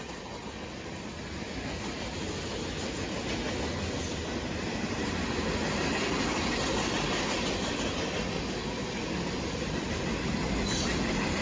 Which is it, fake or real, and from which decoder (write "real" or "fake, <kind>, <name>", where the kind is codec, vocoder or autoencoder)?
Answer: real